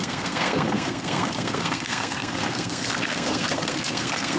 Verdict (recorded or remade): remade